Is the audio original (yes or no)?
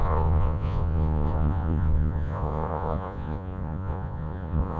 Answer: no